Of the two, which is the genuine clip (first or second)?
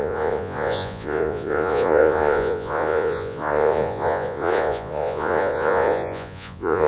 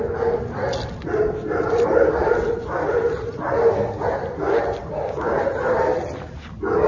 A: second